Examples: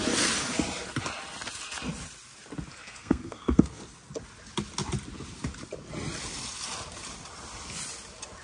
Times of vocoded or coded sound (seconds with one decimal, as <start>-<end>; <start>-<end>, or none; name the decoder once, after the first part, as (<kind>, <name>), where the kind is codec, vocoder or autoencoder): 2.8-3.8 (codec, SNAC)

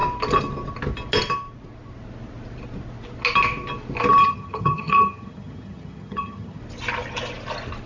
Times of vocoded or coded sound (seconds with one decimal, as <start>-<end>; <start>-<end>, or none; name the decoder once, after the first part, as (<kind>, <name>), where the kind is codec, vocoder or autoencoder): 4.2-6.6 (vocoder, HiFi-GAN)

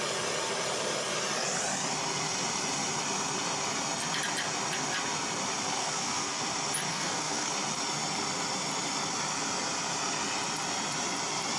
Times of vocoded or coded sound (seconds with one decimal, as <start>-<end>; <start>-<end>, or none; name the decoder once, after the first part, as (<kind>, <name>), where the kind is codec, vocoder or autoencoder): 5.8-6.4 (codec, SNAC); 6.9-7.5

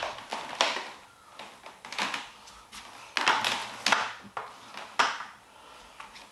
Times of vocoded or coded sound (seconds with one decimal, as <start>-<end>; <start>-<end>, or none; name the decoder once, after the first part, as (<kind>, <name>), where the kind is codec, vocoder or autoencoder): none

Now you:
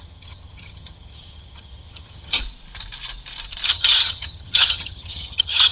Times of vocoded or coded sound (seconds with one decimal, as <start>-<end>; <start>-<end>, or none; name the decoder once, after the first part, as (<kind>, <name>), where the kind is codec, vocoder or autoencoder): 0.0-2.4 (vocoder, HiFi-GAN); 3.7-5.7

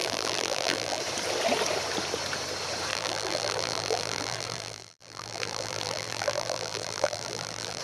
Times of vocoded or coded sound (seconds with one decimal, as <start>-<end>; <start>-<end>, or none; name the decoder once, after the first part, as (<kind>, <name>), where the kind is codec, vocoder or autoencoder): 0.0-1.0 (vocoder, BigVGAN v2); 2.9-7.8